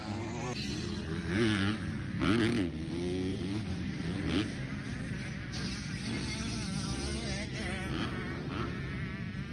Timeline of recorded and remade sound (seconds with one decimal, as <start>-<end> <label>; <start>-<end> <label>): 0.0-3.3 recorded; 3.3-3.9 remade; 3.9-9.5 recorded